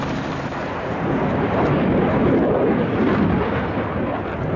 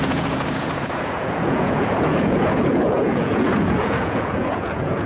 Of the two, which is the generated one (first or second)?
second